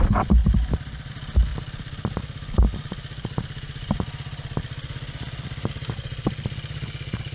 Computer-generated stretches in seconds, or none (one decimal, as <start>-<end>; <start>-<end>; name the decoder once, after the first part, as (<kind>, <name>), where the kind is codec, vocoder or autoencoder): 0.4-1.1 (vocoder, BigVGAN v2)